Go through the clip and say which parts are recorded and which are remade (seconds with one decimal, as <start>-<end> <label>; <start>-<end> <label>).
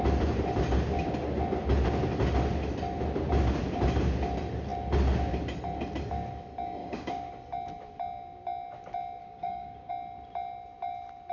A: 0.0-6.8 recorded; 6.8-7.3 remade; 7.3-9.2 recorded; 9.2-9.9 remade; 9.9-11.3 recorded